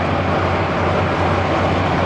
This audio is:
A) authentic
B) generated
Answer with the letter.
A